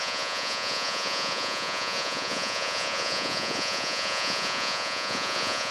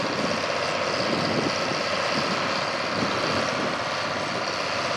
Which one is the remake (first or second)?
first